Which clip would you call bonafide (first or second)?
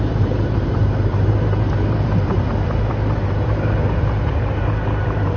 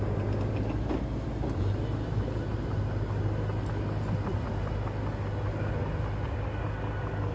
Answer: second